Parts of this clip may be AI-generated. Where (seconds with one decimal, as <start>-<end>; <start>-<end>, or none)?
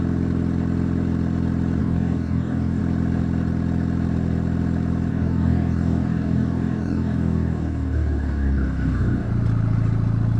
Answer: 1.8-2.8; 5.1-9.3